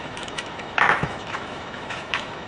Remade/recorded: remade